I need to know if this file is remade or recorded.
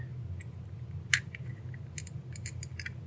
recorded